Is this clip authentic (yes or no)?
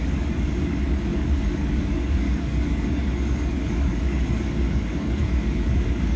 no